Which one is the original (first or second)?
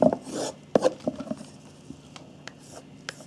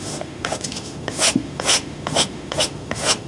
first